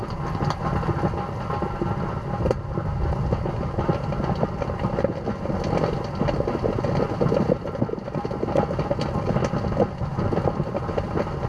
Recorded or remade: recorded